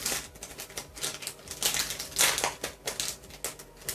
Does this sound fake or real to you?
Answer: real